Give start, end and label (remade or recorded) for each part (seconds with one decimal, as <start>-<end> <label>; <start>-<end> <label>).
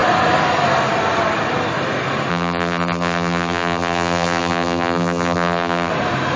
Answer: 0.0-2.3 recorded; 2.3-5.9 remade; 5.9-6.4 recorded